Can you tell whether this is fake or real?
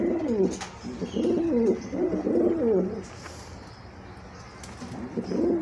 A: real